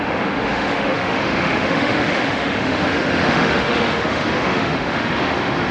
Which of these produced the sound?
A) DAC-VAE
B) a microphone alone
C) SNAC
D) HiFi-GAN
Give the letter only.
A